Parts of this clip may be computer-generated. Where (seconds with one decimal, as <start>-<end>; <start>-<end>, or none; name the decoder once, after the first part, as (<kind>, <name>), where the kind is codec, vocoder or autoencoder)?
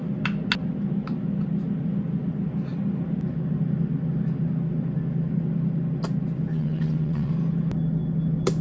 6.5-7.3 (vocoder, WaveNeXt)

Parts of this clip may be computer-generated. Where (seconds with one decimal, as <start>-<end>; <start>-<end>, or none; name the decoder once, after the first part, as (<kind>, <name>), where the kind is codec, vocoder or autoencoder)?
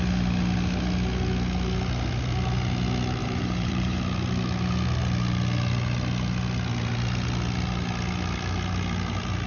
3.2-4.0 (vocoder, BigVGAN v2)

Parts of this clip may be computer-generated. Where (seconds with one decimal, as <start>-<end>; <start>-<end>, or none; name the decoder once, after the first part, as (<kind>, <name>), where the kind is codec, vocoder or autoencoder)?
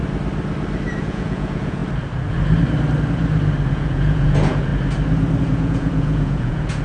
1.0-1.8 (vocoder, Vocos); 3.7-4.7; 5.4-6.8